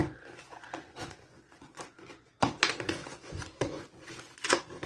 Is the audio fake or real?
fake